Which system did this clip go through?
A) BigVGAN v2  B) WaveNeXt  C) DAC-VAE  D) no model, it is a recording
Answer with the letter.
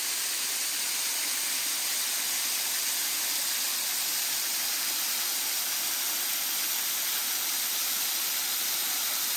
D